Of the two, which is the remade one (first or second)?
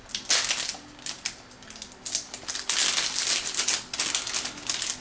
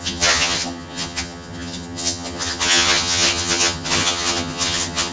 second